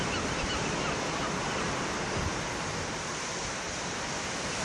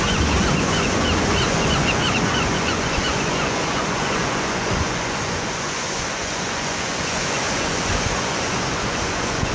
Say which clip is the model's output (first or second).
second